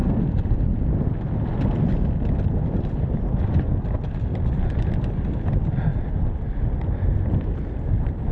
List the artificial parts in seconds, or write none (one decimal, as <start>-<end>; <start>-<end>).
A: none